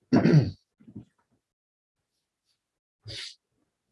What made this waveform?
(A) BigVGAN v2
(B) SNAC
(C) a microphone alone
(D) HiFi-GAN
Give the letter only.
C